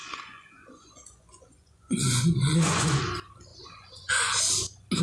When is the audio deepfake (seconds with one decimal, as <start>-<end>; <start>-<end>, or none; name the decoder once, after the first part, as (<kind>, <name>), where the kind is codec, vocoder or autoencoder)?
0.0-3.0 (vocoder, Vocos); 3.5-4.4